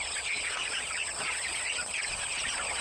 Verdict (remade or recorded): remade